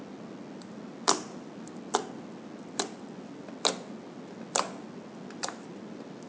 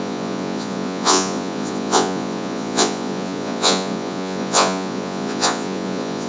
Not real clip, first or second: second